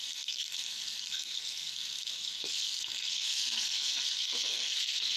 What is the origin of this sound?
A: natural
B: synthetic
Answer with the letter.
B